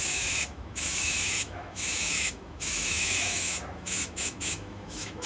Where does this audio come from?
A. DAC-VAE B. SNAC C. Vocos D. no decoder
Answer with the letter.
A